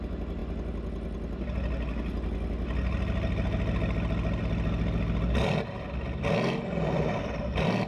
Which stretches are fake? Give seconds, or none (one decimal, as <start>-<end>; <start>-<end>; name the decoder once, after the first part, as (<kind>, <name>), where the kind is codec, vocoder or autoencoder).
none